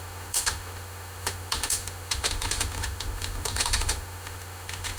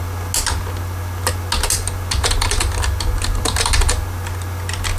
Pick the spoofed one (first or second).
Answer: first